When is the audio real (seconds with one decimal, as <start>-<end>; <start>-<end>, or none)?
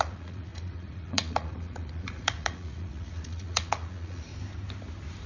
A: 4.3-5.3